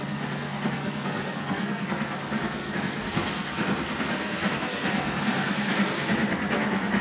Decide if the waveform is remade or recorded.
remade